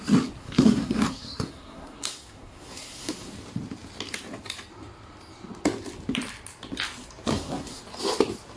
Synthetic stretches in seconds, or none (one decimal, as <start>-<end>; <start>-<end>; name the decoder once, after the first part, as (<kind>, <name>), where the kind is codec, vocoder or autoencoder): 0.4-3.3 (codec, SNAC); 7.3-7.8